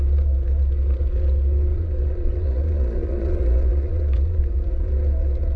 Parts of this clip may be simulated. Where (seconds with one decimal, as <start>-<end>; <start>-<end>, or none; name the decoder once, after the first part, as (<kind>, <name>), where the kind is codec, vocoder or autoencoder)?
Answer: 1.7-4.4 (vocoder, Vocos)